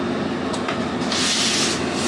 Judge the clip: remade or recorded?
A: recorded